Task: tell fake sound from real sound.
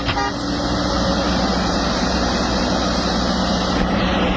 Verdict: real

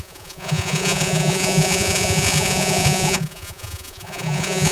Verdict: fake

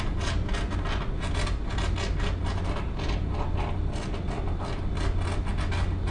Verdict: real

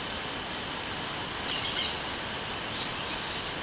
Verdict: real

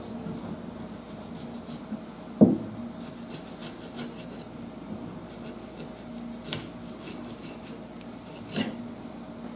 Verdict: real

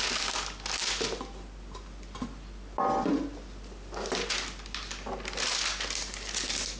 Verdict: real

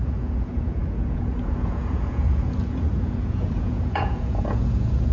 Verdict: fake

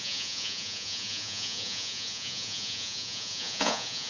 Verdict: fake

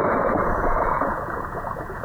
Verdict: fake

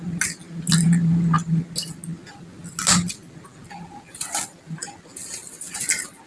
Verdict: real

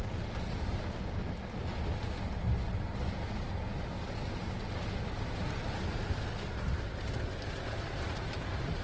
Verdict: real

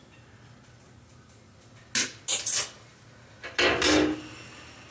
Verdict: real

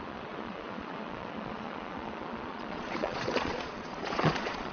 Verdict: fake